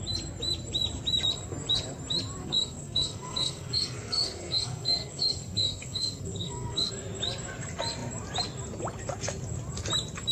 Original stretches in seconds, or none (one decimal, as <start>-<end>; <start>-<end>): 0.0-2.4; 6.9-10.3

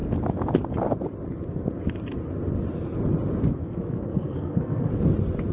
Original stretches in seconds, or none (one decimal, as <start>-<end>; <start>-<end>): 0.0-3.6; 4.9-5.5

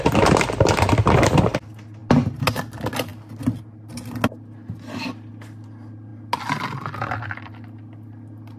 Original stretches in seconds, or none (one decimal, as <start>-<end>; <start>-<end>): 0.0-8.6

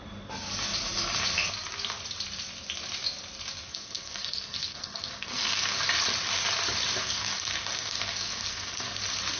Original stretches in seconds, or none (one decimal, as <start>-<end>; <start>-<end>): 0.0-3.7; 5.8-7.0; 9.0-9.4